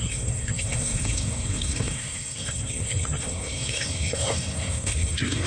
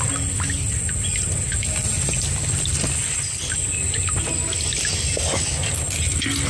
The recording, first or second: second